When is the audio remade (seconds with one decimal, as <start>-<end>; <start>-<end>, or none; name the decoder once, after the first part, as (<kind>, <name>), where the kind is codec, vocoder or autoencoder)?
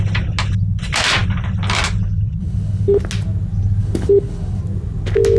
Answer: 2.4-3.0 (codec, HILCodec); 3.8-4.6